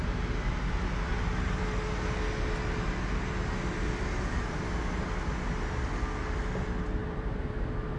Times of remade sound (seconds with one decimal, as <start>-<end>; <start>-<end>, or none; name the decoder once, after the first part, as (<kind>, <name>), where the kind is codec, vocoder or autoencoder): 7.0-7.5 (vocoder, BigVGAN v2)